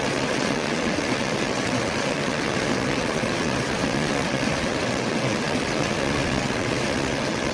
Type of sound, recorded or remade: remade